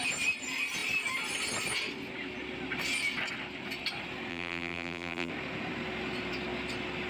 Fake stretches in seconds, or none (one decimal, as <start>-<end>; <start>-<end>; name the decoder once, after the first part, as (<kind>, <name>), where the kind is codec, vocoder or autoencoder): 4.3-5.3 (vocoder, BigVGAN v2)